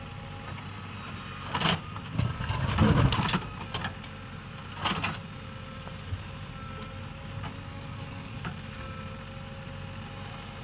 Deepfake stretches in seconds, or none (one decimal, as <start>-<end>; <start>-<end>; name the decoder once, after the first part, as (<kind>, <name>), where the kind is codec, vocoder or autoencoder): 7.7-8.3 (codec, DAC)